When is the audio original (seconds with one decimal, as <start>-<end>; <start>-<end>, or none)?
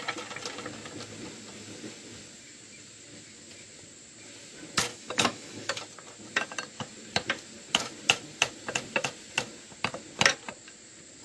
0.0-4.9; 5.8-11.2